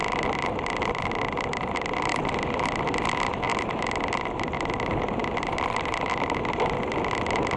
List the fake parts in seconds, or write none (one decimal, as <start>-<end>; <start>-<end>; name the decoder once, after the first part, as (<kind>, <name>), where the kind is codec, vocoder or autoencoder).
none